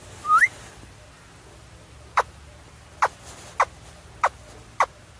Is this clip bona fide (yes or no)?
yes